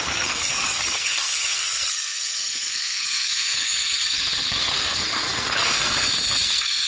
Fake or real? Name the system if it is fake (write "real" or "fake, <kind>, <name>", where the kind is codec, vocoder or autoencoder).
fake, codec, SNAC